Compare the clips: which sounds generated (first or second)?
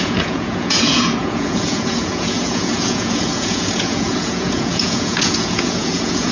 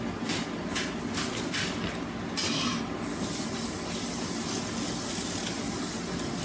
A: first